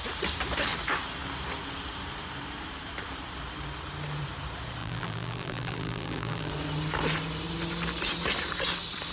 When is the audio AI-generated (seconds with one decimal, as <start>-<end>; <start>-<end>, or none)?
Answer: 4.8-6.5

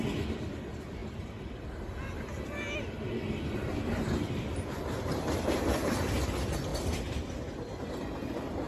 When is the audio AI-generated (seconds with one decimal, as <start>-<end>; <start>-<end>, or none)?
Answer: 1.0-1.8; 6.7-7.3

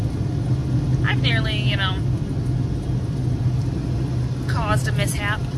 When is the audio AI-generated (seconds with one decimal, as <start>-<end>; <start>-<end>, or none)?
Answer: none

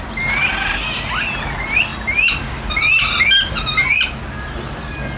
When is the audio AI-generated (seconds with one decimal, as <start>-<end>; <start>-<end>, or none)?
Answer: none

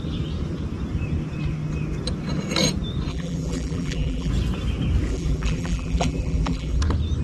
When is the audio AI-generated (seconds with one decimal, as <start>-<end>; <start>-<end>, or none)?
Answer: 3.1-4.3; 5.1-6.8

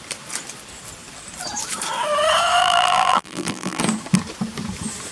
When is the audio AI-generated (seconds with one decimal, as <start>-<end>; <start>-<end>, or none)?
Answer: 2.6-3.8